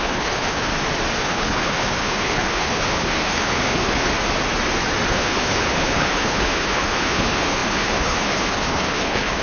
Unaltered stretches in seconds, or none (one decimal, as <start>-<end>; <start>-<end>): 0.7-1.2; 4.1-5.1